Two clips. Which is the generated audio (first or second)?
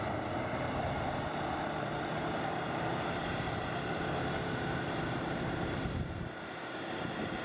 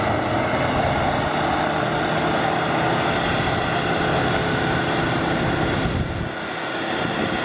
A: first